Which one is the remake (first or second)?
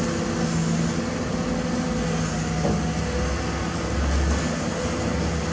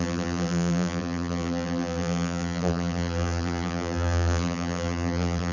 second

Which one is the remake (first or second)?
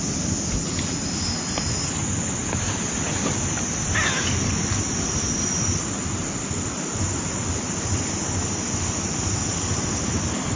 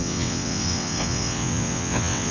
second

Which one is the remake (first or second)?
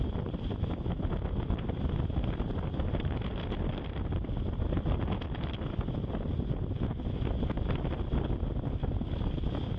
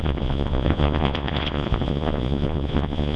second